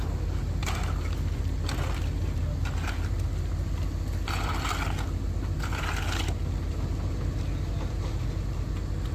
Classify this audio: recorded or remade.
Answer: recorded